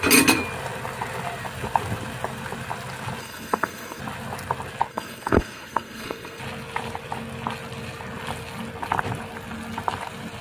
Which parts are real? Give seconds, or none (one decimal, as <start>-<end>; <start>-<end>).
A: 0.0-3.2; 4.0-4.9; 6.4-10.4